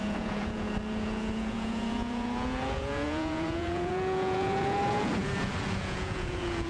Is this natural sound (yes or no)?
no